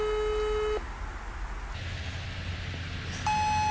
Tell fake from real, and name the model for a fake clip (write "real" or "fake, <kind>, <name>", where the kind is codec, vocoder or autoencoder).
real